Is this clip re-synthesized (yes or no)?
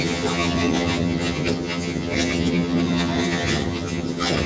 yes